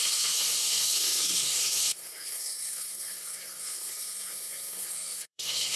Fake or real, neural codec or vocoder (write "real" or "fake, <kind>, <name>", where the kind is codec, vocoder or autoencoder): fake, codec, SNAC